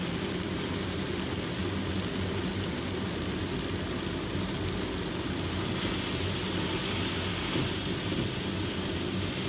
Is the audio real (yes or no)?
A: yes